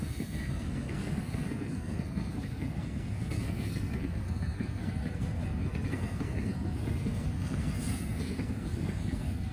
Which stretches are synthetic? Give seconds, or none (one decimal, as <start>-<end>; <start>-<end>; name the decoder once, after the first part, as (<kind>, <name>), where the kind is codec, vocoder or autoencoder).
0.0-9.5 (codec, SNAC)